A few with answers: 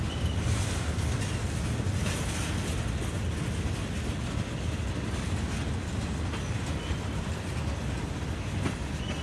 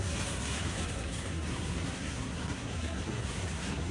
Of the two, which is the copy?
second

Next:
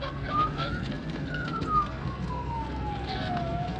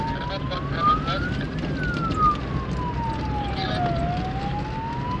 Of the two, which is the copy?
first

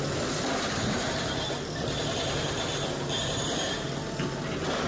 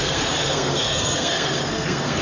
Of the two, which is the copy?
second